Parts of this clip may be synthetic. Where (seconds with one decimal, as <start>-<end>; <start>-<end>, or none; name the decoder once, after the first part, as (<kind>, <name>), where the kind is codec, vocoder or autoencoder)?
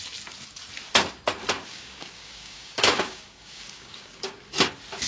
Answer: 1.7-4.4 (codec, DAC)